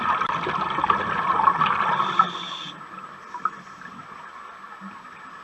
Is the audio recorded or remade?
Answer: recorded